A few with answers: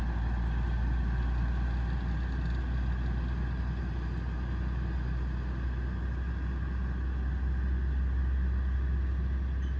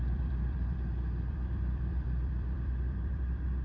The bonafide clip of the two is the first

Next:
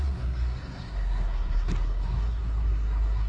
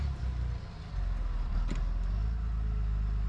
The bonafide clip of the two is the second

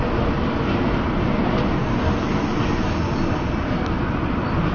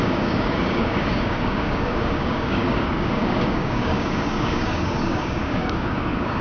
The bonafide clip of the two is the first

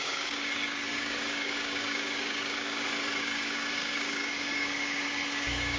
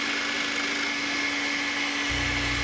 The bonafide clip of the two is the second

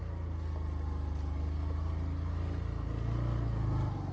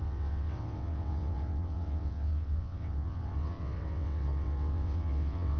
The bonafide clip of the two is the first